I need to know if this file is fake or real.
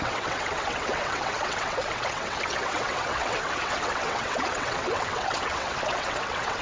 fake